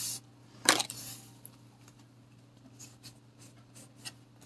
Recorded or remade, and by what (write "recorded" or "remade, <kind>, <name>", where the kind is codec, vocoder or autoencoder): recorded